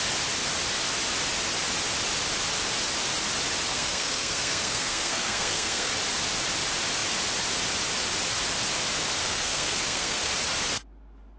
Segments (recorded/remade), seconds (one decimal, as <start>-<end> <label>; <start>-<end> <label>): 0.0-3.7 recorded; 3.7-5.9 remade; 5.9-9.2 recorded; 9.2-10.3 remade; 10.3-11.4 recorded